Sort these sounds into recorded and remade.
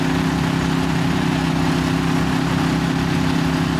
recorded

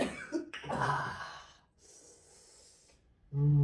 remade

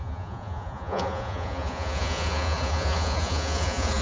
remade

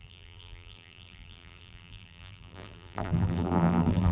remade